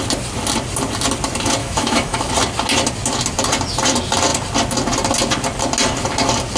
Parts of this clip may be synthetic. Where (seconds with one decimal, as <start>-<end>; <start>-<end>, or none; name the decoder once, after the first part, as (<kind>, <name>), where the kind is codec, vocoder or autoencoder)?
1.6-2.3 (autoencoder, DAC-VAE)